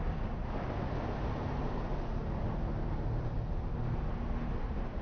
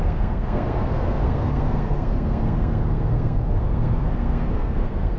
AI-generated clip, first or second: second